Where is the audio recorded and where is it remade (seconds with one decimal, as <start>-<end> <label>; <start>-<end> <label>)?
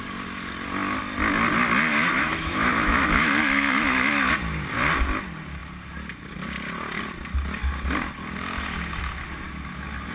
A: 0.0-1.9 recorded; 1.9-4.3 remade; 4.3-10.1 recorded